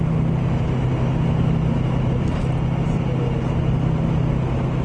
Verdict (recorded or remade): recorded